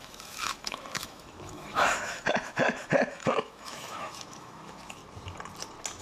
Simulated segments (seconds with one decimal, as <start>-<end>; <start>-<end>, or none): 0.0-5.0